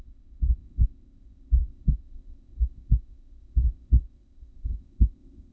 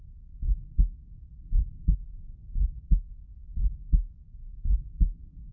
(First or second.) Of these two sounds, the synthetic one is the first